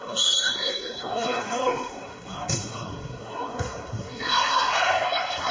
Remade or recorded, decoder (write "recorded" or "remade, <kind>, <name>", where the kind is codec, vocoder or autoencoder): remade, codec, SNAC